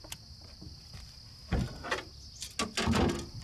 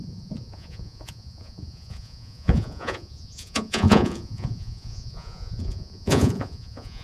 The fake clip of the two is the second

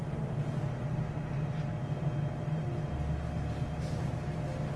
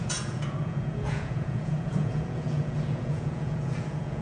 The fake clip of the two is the second